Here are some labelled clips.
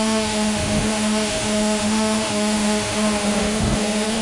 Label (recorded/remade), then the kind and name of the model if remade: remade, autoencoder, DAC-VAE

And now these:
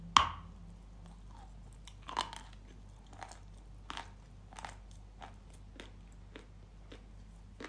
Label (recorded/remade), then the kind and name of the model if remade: recorded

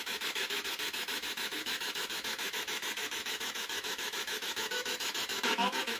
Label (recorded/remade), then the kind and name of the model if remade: remade, autoencoder, DAC-VAE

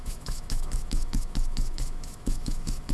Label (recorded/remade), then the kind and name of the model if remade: remade, autoencoder, DAC-VAE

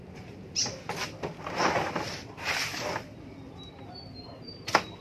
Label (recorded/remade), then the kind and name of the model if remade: recorded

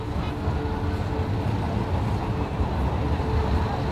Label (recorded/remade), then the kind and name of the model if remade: recorded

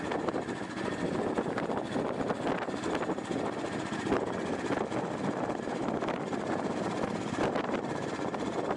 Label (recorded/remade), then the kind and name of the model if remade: recorded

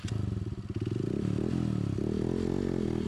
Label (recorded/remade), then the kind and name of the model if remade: recorded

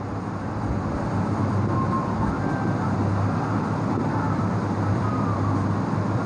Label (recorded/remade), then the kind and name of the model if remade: recorded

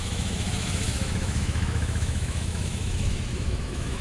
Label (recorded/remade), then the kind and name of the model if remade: remade, autoencoder, DAC-VAE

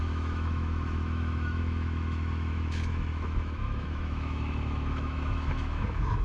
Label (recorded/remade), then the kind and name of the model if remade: remade, autoencoder, DAC-VAE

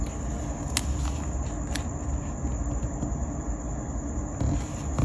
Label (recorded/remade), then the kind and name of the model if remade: recorded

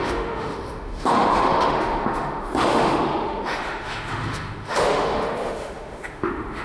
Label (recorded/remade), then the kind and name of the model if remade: remade, autoencoder, DAC-VAE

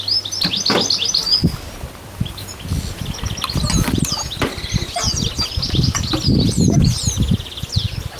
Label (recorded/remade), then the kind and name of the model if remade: recorded